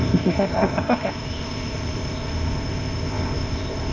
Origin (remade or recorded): remade